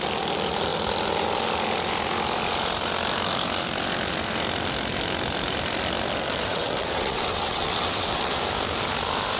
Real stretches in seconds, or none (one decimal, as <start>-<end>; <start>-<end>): 0.0-6.5; 8.4-9.4